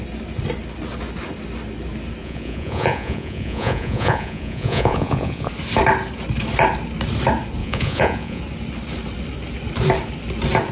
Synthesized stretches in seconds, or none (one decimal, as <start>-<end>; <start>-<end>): 2.2-5.5; 7.6-8.4